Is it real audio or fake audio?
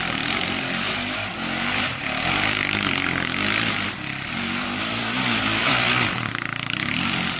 fake